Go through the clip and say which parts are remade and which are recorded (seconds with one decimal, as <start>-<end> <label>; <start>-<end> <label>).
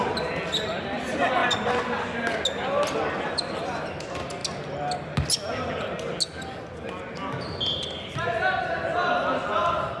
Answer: 0.0-10.0 recorded